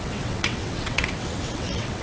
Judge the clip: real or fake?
fake